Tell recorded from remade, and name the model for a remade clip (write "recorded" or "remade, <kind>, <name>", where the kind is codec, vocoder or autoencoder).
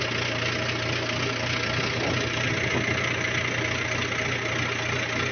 recorded